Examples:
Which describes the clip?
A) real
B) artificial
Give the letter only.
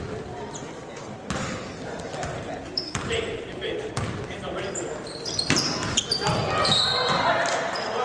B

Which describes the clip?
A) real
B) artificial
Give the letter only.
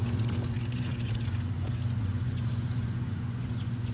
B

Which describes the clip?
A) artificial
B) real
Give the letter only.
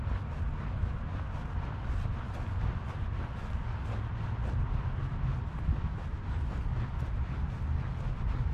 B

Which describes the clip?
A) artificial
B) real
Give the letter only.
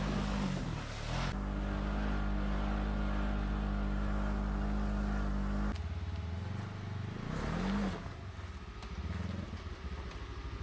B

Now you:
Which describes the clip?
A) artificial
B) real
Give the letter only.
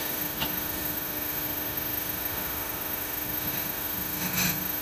A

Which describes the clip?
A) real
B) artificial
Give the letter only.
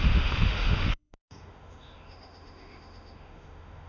B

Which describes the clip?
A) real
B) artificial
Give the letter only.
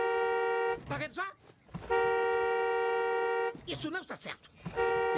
A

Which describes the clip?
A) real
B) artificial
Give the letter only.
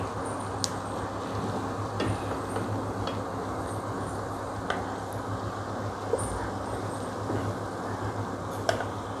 A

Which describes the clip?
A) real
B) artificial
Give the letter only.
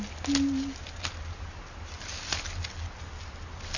A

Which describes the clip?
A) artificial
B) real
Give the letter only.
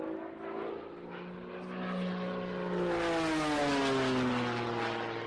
B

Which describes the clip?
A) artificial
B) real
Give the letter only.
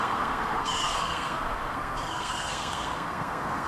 A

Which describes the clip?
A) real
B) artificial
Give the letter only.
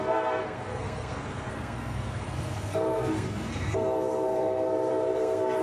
B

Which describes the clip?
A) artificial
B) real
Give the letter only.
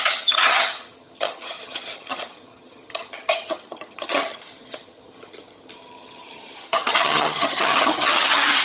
A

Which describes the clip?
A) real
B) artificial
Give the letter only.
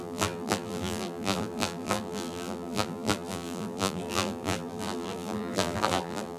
B